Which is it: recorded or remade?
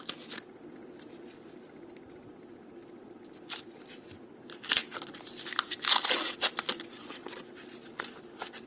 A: recorded